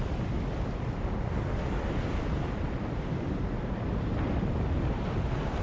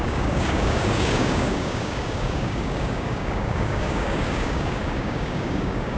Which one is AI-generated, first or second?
second